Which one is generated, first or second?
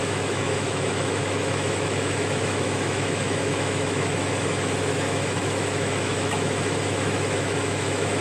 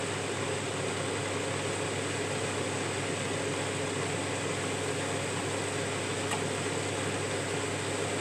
first